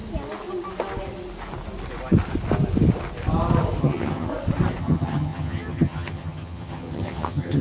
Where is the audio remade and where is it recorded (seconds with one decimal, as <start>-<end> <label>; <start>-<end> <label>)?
0.0-3.8 recorded; 3.8-4.3 remade; 4.3-4.8 recorded; 4.8-7.6 remade